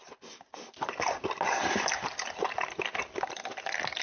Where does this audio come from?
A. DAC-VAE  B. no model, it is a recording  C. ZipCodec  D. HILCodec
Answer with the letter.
B